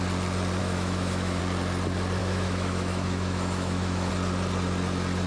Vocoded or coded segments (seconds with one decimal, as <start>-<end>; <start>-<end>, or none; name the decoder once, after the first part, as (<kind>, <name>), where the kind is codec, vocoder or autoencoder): 0.6-1.4 (autoencoder, DAC-VAE); 2.2-4.1

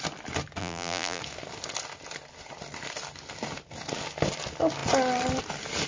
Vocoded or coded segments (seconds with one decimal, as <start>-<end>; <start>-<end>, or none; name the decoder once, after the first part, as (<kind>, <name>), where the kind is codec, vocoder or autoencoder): 0.6-1.2 (vocoder, BigVGAN v2)

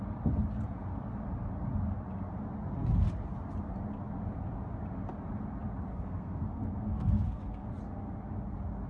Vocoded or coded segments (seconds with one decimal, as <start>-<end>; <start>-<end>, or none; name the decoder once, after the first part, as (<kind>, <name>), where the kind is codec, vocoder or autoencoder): 5.9-7.7 (codec, SNAC)

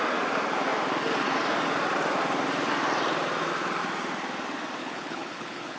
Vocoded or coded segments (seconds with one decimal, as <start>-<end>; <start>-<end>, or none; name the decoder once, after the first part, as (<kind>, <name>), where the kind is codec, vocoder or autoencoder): 4.8-5.8 (codec, HILCodec)

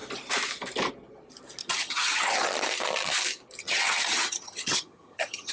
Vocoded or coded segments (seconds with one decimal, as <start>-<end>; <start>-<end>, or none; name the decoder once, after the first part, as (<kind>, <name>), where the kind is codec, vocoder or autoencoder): 1.6-2.5 (vocoder, HiFi-GAN); 3.6-5.5